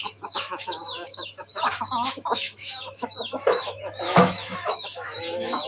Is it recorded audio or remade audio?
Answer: remade